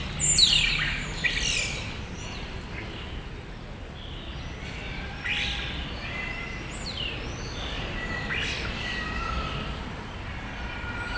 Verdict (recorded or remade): recorded